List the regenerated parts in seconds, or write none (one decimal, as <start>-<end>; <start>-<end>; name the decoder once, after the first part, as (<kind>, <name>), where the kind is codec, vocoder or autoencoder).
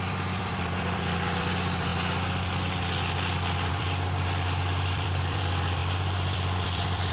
0.0-1.9 (vocoder, BigVGAN v2); 3.7-7.1